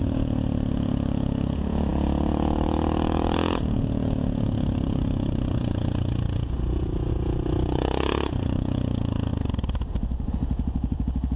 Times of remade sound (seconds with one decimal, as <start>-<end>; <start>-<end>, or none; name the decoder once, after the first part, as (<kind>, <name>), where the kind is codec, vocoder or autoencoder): 0.0-9.3 (vocoder, Vocos); 10.3-11.4